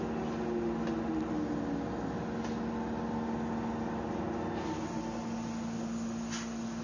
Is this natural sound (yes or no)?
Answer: yes